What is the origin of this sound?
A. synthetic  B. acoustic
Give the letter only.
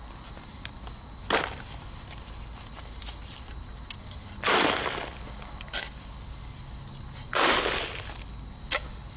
B